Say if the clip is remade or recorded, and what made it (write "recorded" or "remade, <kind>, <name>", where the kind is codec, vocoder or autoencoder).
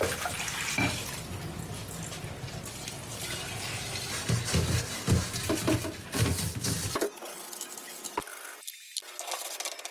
recorded